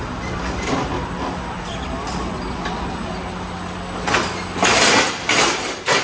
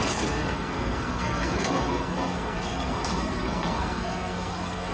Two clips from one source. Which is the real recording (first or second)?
first